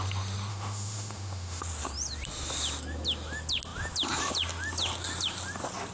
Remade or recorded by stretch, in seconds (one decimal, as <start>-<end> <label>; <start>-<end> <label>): 0.0-0.5 recorded; 0.5-1.6 remade; 1.6-5.9 recorded

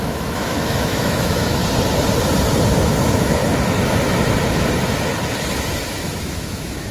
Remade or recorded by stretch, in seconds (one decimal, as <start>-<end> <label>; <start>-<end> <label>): 0.0-1.6 remade; 1.6-3.0 recorded; 3.0-3.4 remade; 3.4-6.2 recorded; 6.2-6.9 remade

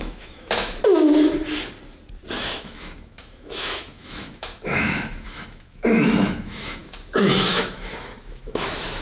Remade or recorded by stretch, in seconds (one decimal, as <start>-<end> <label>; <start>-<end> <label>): 0.0-0.8 remade; 0.8-2.4 recorded; 2.4-9.0 remade

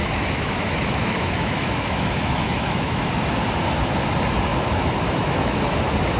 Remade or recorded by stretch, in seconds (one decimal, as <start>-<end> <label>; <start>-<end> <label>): 0.0-3.0 remade; 3.0-4.5 recorded; 4.5-5.7 remade; 5.7-6.2 recorded

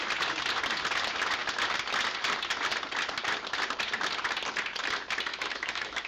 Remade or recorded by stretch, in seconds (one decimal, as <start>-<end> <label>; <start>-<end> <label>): 0.0-5.3 recorded; 5.3-6.1 remade